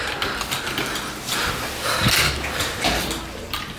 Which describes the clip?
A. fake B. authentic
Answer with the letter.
B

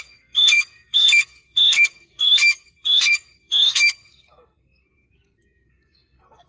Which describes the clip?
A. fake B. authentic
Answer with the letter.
A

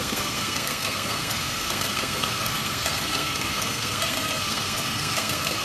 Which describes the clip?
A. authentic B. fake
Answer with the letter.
B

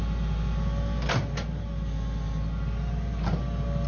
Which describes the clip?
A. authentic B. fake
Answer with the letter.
A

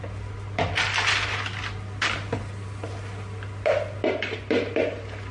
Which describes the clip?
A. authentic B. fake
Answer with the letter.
A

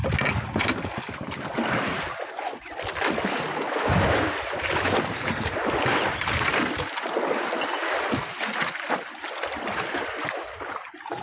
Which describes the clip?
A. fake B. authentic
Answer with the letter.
B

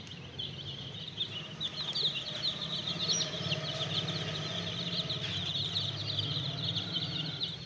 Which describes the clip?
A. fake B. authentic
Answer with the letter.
B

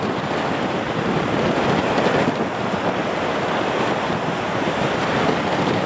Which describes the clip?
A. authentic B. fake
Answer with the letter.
A